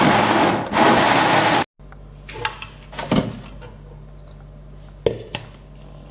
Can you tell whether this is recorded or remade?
recorded